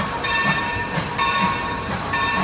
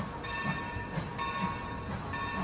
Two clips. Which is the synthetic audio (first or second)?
first